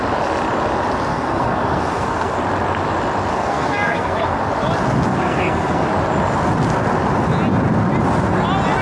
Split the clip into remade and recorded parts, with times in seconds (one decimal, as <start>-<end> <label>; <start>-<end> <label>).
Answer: 0.0-1.1 recorded; 1.1-2.4 remade; 2.4-3.3 recorded; 3.3-4.4 remade; 4.4-5.1 recorded; 5.1-5.8 remade; 5.8-8.8 recorded